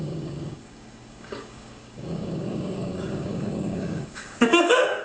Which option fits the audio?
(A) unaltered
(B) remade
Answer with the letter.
B